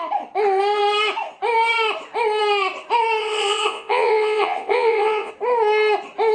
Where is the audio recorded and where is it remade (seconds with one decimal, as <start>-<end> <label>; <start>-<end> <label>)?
0.0-3.2 recorded; 3.2-5.3 remade; 5.3-6.3 recorded